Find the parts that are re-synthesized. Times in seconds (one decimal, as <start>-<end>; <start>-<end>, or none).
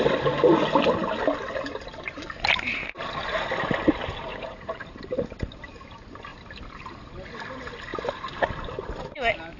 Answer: 4.3-4.8